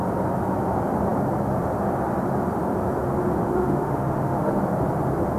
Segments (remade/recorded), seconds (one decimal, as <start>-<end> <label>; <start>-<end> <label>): 0.0-3.4 recorded; 3.4-4.6 remade; 4.6-5.4 recorded